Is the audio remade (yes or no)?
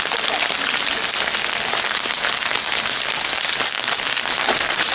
no